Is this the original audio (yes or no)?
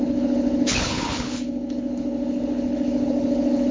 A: no